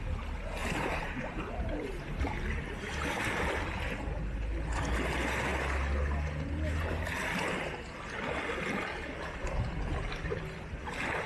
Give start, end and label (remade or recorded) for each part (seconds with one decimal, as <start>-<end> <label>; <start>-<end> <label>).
0.0-0.6 recorded; 0.6-3.4 remade; 3.4-11.3 recorded